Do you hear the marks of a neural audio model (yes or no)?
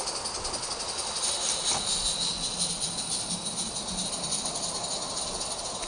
no